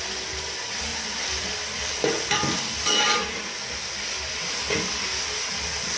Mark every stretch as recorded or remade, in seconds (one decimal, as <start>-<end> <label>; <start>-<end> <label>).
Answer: 0.0-0.9 recorded; 0.9-4.5 remade; 4.5-6.0 recorded

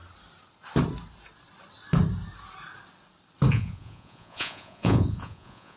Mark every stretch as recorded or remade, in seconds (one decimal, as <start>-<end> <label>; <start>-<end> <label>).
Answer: 0.0-3.5 recorded; 3.5-5.8 remade

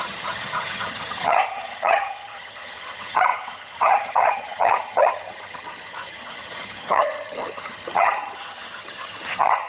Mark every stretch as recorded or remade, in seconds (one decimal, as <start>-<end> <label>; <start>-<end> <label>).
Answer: 0.0-9.7 remade

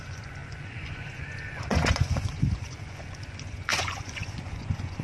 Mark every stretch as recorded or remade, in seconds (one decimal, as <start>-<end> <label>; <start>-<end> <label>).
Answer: 0.0-5.0 remade

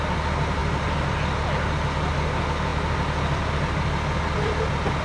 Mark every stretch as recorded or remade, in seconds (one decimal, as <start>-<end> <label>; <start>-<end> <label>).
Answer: 0.0-5.0 recorded

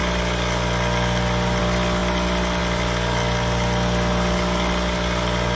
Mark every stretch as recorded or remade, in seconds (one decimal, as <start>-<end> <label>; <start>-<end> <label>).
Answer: 0.0-5.6 recorded

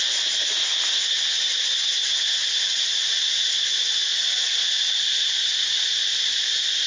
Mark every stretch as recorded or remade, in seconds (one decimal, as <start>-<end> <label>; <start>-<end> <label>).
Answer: 0.0-6.9 recorded